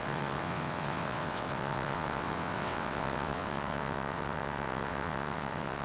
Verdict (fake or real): fake